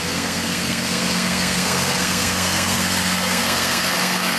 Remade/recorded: remade